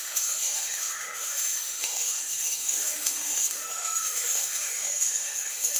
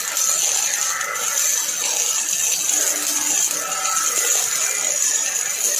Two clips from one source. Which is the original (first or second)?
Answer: second